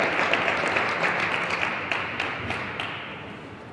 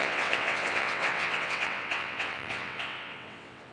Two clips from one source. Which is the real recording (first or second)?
first